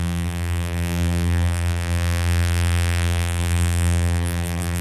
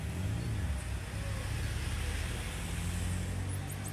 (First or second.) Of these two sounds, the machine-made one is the first